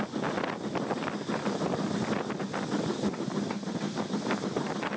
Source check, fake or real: real